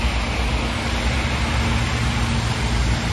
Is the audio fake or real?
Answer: real